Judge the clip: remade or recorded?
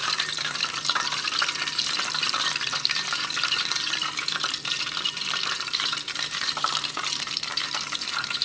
remade